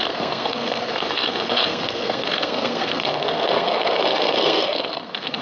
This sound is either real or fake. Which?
fake